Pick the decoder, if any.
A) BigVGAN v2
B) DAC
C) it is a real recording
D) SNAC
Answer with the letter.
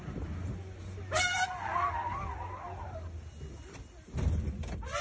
C